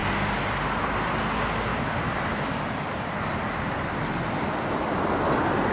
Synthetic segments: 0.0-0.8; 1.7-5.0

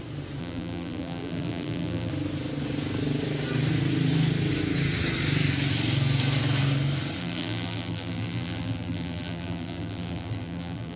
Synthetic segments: 0.4-2.1; 7.2-11.0

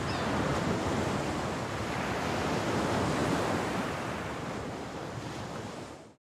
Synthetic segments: 0.5-1.2; 3.2-5.9

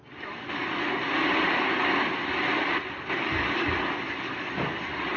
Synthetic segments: none

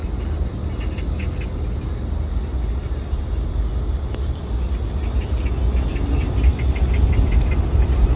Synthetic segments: none